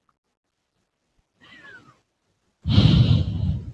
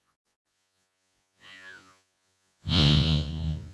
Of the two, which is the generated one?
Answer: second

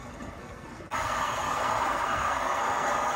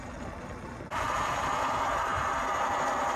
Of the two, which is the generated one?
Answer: first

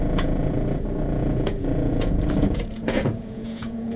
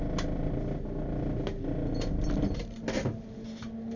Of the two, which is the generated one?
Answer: first